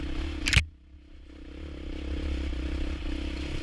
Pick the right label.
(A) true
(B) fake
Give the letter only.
A